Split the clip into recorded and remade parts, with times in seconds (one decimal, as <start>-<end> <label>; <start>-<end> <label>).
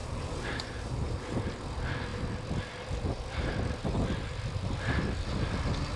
0.0-1.6 remade; 1.6-2.1 recorded; 2.1-6.0 remade